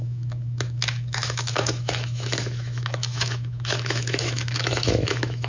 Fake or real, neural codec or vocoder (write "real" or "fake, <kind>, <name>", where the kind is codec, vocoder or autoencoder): fake, autoencoder, DAC-VAE